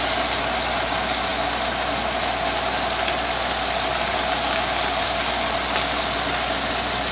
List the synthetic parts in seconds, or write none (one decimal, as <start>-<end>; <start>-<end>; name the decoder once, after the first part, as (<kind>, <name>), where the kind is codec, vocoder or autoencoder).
none